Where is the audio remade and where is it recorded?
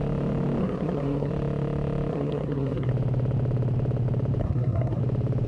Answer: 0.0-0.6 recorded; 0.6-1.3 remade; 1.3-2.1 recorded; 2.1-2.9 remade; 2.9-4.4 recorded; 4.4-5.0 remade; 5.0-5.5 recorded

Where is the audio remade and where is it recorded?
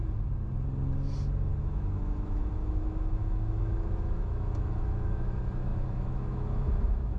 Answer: 0.0-1.6 recorded; 1.6-7.2 remade